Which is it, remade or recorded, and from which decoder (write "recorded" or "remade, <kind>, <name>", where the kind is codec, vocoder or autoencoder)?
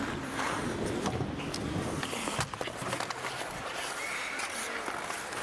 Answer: recorded